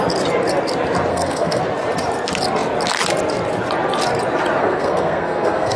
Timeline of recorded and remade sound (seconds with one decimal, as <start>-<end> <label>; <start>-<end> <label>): 0.0-1.1 recorded; 1.1-1.6 remade; 1.6-4.6 recorded; 4.6-5.8 remade